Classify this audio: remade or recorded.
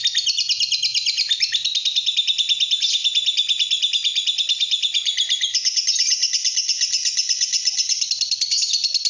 recorded